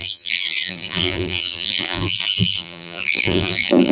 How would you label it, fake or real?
fake